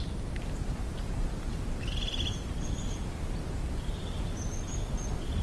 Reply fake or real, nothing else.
real